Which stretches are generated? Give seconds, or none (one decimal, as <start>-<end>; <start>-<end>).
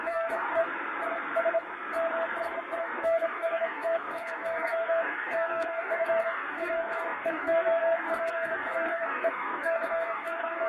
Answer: 0.0-0.6; 2.8-10.7